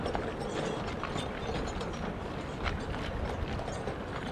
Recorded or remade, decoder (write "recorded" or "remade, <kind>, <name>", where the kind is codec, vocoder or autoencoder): recorded